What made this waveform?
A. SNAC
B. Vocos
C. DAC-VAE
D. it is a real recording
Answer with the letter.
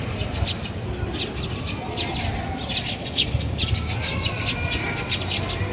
D